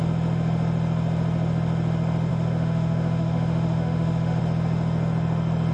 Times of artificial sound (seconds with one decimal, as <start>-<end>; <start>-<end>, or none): 2.3-4.4